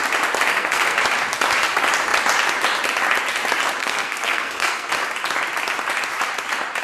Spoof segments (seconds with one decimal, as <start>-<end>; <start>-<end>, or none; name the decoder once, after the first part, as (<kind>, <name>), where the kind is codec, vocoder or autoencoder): 0.5-1.0 (codec, SNAC); 3.8-4.9

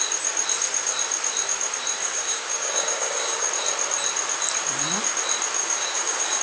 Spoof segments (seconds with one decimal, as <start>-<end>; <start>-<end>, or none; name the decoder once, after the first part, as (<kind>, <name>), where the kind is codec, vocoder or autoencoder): 2.0-3.5 (codec, DAC); 5.6-6.4

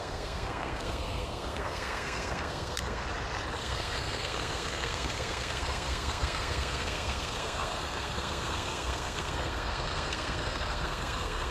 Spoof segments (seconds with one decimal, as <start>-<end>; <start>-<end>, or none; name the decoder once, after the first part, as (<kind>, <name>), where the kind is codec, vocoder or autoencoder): 0.0-3.0 (codec, SNAC); 3.6-11.5

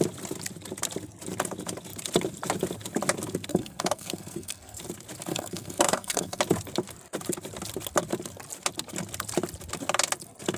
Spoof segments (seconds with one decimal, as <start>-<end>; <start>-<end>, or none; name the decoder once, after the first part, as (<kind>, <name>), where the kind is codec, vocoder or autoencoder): 3.5-4.8 (codec, SNAC); 5.3-6.4

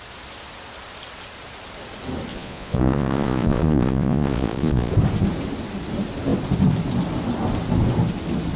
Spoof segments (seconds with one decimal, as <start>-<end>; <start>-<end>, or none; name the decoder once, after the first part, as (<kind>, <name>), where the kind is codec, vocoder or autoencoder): 2.3-4.9 (vocoder, Vocos)

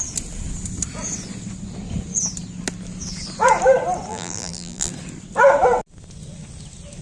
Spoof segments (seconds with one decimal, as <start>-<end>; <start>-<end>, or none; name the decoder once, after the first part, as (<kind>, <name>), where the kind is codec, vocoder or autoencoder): 4.1-4.9 (vocoder, BigVGAN v2)

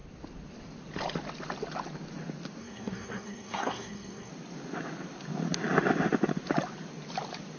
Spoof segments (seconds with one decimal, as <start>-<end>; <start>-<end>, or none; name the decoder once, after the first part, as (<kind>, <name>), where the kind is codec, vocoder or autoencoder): 2.6-4.3 (codec, SNAC)